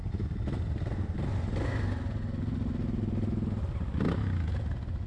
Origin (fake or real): real